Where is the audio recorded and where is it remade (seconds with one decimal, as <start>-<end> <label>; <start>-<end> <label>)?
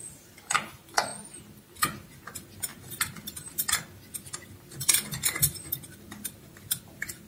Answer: 0.0-7.3 recorded